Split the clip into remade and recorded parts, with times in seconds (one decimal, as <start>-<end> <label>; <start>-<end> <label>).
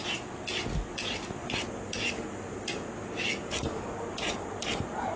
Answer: 0.0-5.2 recorded